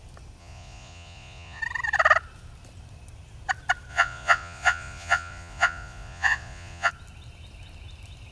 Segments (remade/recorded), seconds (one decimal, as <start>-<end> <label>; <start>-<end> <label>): 0.0-0.4 recorded; 0.4-1.6 remade; 1.6-3.9 recorded; 3.9-6.9 remade; 6.9-8.3 recorded